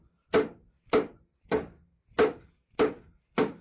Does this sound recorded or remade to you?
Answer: recorded